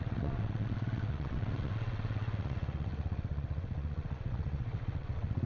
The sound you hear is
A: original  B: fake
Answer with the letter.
B